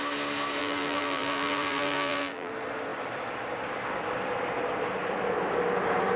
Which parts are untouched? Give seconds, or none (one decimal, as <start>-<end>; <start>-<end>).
0.0-0.6; 2.5-6.2